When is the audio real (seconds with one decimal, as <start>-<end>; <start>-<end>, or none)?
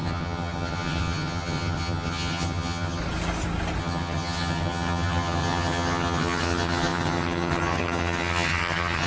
3.0-3.8